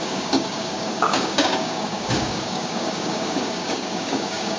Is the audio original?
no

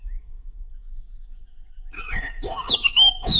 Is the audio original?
no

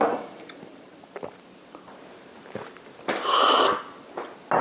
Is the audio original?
yes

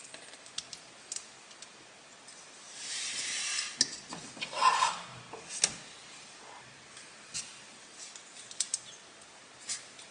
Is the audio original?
yes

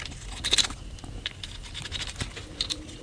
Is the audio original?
yes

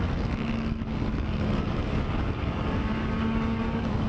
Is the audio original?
no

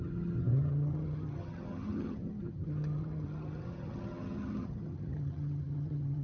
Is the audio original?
no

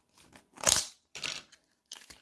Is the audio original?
no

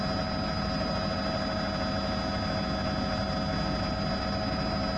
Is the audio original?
yes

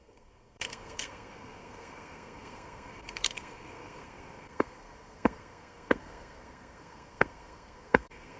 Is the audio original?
no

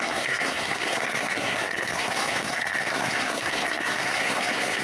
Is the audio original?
no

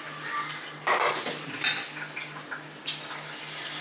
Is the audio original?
yes